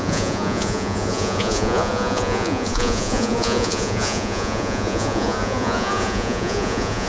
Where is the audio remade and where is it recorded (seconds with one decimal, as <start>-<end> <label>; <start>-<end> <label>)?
0.0-7.1 remade